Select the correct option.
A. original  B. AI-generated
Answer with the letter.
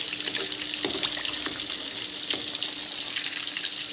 A